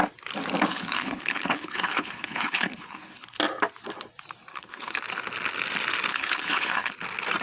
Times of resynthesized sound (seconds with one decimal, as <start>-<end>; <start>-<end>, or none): 0.7-3.4; 4.5-5.0; 6.1-6.9